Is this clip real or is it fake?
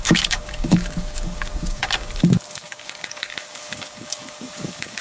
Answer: fake